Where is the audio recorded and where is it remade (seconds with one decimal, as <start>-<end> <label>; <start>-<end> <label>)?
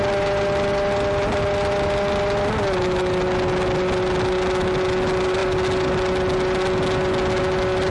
0.0-7.9 recorded